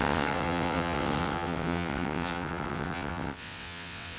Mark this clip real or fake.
fake